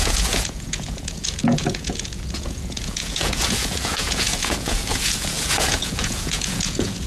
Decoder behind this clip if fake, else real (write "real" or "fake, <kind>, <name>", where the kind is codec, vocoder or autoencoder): fake, vocoder, Vocos